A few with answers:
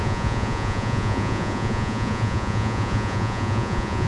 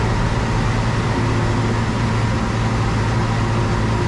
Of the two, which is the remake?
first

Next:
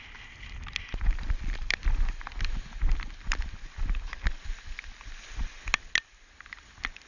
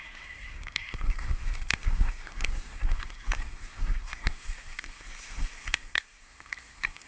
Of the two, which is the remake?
second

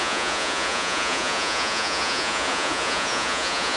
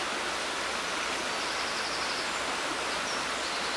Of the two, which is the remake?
first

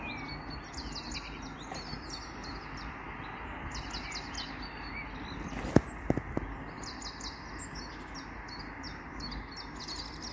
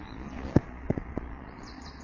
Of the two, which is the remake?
second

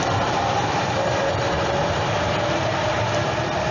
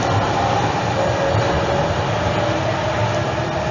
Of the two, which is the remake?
first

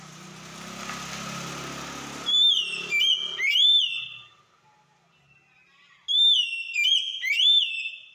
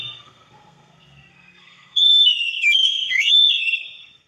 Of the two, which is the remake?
second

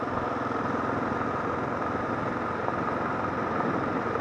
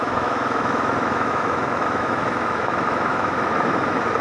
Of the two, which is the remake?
second